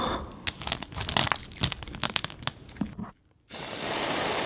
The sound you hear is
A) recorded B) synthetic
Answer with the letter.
A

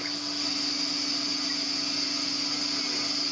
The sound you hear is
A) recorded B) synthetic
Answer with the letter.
A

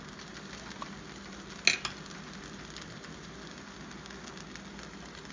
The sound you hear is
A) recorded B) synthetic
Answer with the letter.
A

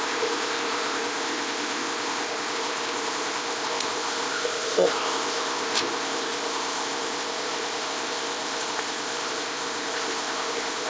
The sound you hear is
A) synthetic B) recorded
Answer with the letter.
A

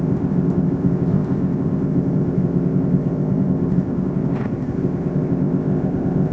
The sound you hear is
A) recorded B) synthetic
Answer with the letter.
B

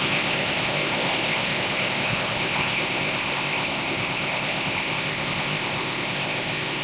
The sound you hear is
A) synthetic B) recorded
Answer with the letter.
A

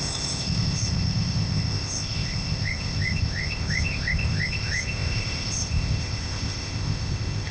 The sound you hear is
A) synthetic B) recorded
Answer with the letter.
A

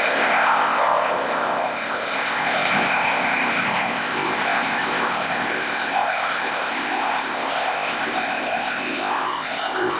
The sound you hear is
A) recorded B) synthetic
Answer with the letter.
B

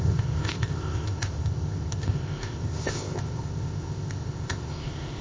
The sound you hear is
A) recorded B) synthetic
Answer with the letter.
B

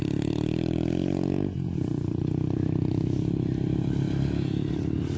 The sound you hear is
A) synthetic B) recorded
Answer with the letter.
B